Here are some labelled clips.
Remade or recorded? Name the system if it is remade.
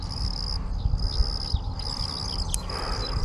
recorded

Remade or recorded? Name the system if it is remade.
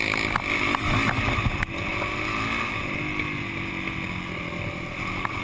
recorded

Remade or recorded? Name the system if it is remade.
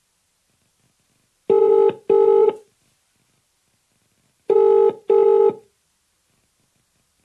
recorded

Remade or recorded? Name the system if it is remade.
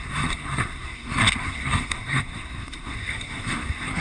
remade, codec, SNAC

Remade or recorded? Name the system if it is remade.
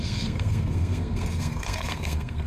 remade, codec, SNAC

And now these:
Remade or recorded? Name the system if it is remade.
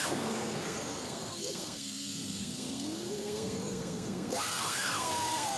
remade, codec, SNAC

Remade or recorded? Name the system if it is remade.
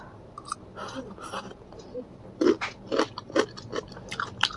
recorded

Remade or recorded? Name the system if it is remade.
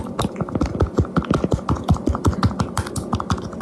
recorded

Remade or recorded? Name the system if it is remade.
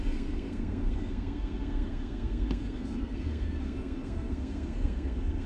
remade, codec, SNAC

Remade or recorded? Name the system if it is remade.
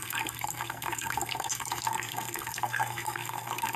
remade, codec, SNAC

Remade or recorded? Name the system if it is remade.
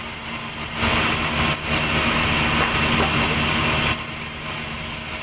recorded